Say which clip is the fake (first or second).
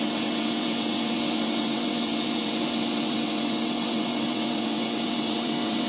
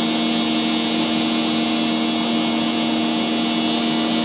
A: first